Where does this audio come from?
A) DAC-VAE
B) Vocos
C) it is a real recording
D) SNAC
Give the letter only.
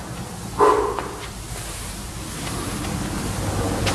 C